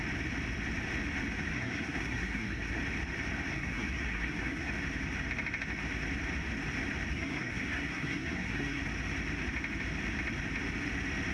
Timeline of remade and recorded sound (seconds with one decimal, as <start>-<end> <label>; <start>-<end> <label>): 0.0-1.5 recorded; 1.5-2.8 remade; 2.8-3.5 recorded; 3.5-4.7 remade; 4.7-7.1 recorded; 7.1-8.8 remade; 8.8-11.3 recorded